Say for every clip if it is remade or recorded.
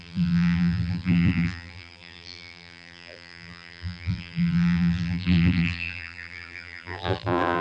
remade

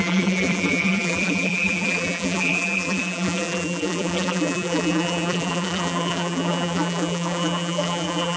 remade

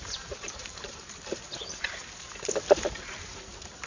remade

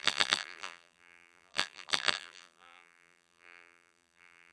remade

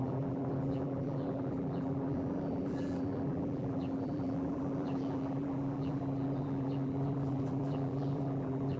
remade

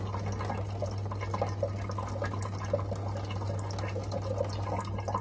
recorded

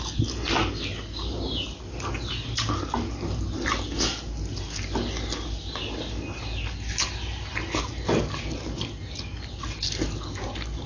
recorded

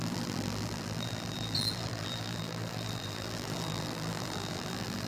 remade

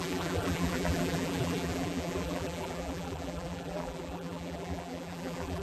remade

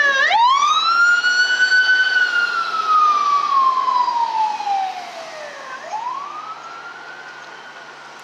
recorded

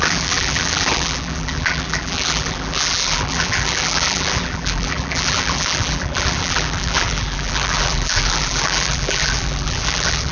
remade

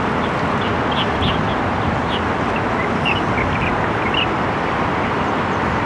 recorded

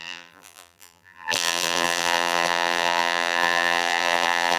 remade